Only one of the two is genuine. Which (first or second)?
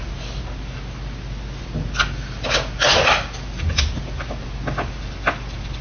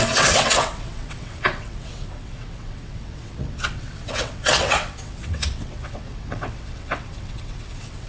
first